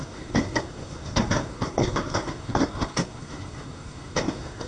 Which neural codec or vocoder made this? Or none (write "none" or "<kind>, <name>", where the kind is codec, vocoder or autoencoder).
codec, SNAC